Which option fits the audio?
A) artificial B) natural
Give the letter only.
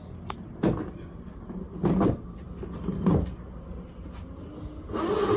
B